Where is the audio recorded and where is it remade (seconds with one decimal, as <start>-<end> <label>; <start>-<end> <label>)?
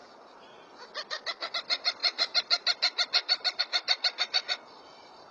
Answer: 0.0-5.3 recorded